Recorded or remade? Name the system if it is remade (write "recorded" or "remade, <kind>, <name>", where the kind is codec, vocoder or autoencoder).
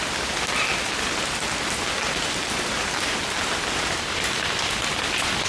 recorded